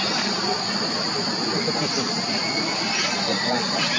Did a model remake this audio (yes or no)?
no